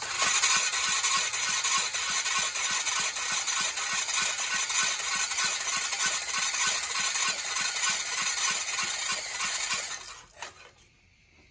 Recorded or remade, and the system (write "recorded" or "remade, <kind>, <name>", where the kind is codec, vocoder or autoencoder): recorded